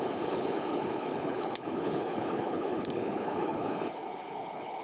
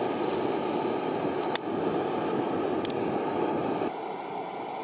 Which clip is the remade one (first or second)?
first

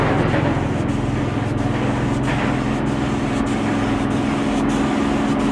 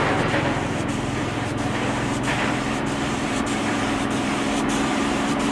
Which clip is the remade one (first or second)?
second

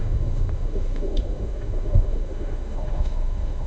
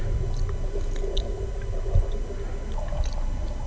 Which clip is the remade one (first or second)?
first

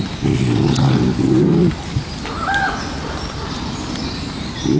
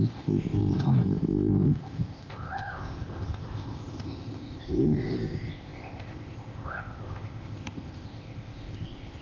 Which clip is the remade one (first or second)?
second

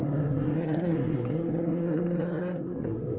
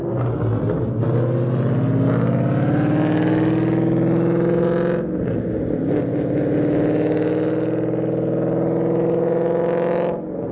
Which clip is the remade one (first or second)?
first